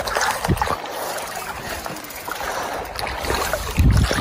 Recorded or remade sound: recorded